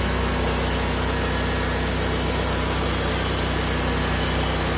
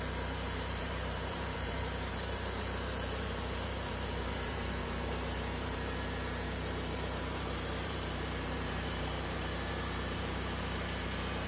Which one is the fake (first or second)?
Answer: second